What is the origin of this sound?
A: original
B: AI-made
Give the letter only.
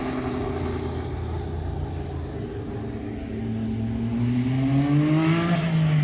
A